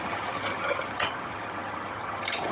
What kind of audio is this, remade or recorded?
remade